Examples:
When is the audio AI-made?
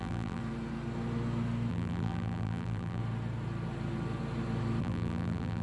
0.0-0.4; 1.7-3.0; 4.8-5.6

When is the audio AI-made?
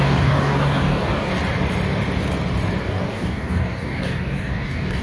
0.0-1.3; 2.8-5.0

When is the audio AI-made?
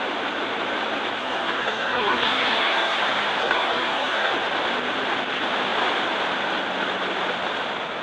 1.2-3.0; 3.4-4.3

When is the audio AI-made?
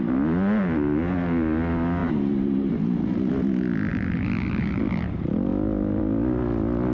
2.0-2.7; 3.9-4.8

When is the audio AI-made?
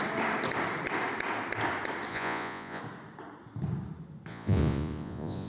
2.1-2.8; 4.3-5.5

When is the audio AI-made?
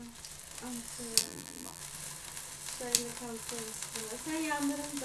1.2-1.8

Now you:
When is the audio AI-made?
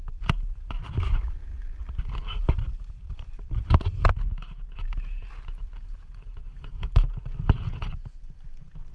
none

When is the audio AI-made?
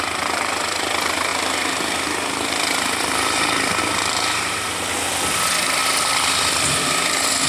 1.3-3.8